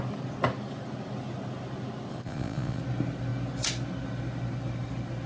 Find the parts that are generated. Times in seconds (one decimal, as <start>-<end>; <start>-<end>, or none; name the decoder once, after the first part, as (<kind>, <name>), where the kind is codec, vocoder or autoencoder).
2.1-2.8 (vocoder, Vocos)